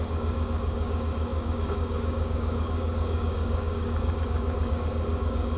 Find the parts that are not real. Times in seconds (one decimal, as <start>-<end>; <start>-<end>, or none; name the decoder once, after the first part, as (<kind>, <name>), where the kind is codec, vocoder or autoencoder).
0.0-5.6 (codec, DAC)